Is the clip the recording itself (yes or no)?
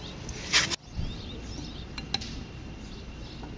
yes